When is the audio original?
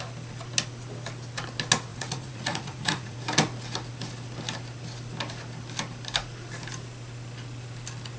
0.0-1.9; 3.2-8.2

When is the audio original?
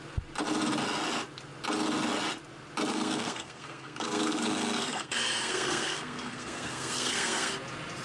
0.0-2.9; 7.5-8.0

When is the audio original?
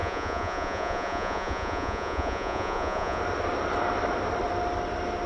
3.2-5.3